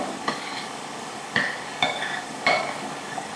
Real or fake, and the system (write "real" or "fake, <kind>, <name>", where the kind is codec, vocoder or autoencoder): fake, codec, DAC